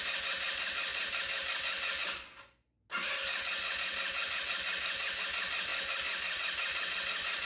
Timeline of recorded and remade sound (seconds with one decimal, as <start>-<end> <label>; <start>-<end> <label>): 0.0-7.4 recorded

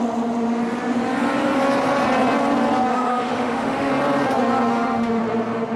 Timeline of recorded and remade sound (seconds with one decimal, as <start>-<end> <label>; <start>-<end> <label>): 0.0-2.9 recorded; 2.9-3.9 remade; 3.9-4.7 recorded; 4.7-5.2 remade; 5.2-5.8 recorded

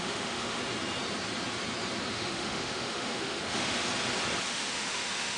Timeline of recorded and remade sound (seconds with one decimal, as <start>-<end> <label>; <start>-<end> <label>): 0.0-0.6 remade; 0.6-2.1 recorded; 2.1-3.9 remade; 3.9-4.5 recorded; 4.5-5.4 remade

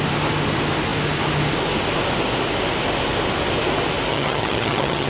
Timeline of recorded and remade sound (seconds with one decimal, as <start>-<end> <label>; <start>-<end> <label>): 0.0-4.1 recorded; 4.1-5.1 remade

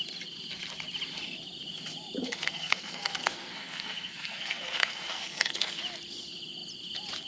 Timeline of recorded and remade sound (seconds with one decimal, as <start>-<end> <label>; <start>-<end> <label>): 0.0-2.2 recorded; 2.2-5.8 remade; 5.8-7.3 recorded

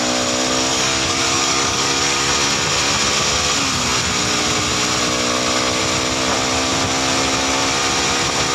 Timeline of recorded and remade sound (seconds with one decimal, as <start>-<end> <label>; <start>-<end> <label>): 0.0-0.7 recorded; 0.7-2.3 remade; 2.3-8.5 recorded